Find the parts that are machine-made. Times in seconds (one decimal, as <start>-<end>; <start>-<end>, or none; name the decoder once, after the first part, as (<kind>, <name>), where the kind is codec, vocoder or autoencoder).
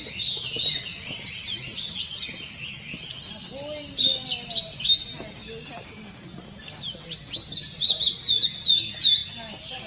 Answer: none